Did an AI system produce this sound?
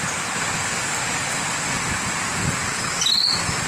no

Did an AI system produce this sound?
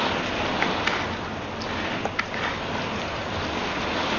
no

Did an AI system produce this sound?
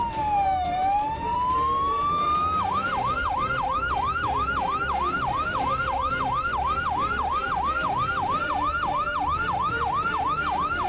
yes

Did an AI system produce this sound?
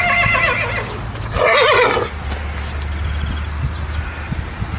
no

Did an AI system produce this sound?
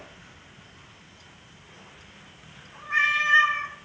no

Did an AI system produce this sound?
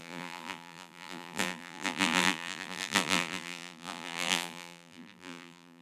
yes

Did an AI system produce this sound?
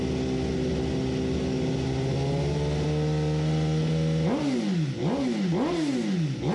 no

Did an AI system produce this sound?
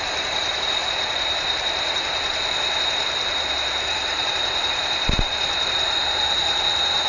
yes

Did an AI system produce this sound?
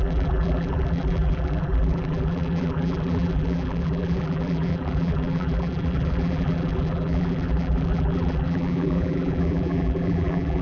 yes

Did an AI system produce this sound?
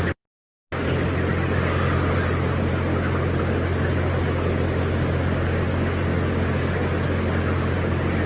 no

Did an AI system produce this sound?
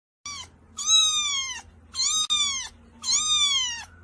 no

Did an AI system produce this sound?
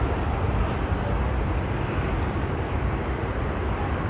no